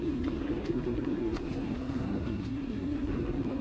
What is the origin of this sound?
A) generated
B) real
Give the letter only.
A